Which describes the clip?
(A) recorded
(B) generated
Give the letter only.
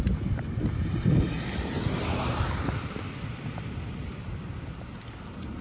A